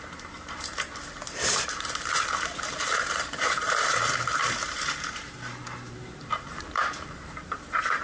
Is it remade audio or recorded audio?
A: remade